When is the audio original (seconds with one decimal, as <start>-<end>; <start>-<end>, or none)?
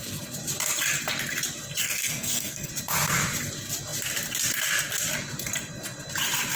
0.0-1.8; 2.7-6.6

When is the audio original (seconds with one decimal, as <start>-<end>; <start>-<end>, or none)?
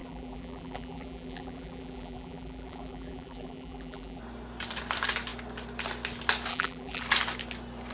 4.2-6.5; 7.0-7.9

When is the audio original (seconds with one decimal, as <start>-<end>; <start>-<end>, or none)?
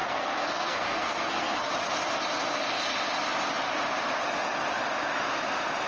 1.7-5.9